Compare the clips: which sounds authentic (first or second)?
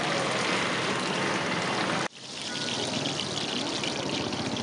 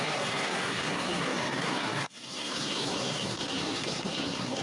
first